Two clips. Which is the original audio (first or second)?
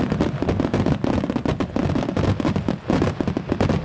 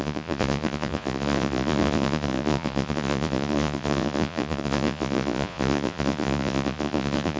first